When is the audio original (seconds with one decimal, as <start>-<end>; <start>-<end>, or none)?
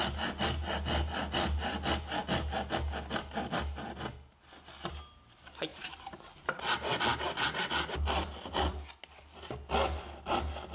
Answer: 0.0-5.7; 6.6-10.7